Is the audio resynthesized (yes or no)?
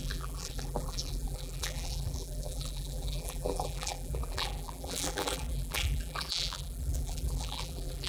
yes